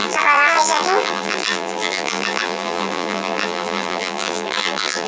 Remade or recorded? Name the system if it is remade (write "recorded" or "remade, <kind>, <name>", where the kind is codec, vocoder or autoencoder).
remade, vocoder, BigVGAN v2